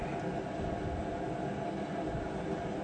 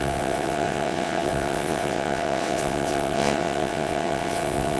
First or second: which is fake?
second